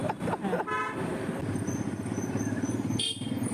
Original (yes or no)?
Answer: yes